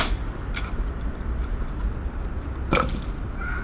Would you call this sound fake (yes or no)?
no